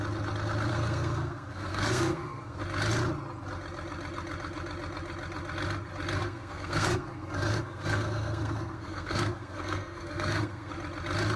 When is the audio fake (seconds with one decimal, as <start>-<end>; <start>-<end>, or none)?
0.7-2.6; 6.2-10.7